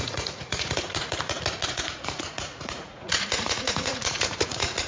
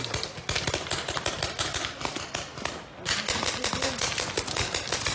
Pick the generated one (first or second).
first